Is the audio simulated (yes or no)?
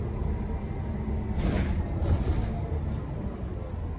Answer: no